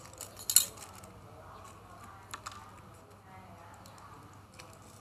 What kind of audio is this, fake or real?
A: real